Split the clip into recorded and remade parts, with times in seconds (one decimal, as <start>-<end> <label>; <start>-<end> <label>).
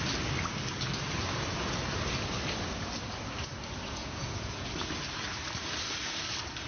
0.0-4.0 recorded; 4.0-4.7 remade; 4.7-6.7 recorded